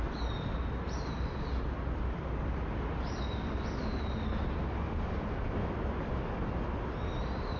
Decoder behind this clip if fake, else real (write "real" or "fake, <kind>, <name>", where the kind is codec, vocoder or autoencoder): real